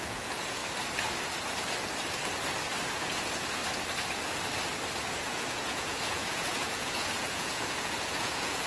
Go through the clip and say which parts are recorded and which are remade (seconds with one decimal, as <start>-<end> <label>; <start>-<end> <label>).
0.0-0.6 remade; 0.6-2.9 recorded; 2.9-3.6 remade; 3.6-5.0 recorded; 5.0-8.7 remade